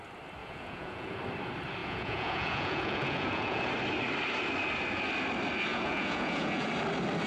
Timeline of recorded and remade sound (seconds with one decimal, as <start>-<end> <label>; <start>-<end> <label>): 0.0-0.4 recorded; 0.4-1.2 remade; 1.2-1.8 recorded; 1.8-3.7 remade; 3.7-5.7 recorded; 5.7-6.7 remade; 6.7-7.3 recorded